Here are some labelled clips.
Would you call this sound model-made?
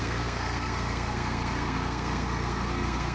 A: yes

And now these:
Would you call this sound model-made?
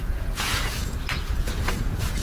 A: yes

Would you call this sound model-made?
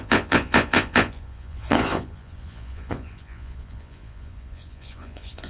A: yes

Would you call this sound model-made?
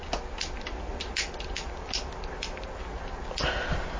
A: no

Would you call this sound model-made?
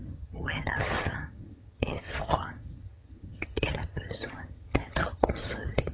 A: yes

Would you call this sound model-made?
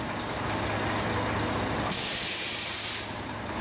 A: no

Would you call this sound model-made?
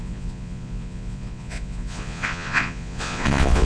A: yes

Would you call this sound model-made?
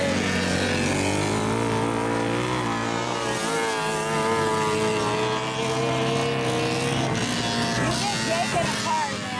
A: no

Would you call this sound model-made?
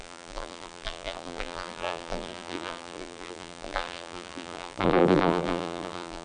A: yes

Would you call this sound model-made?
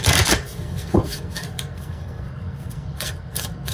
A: yes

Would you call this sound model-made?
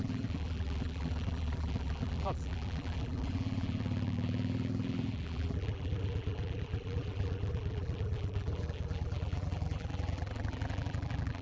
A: yes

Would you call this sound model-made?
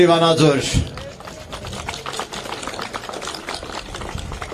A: no